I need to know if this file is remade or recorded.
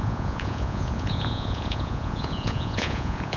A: remade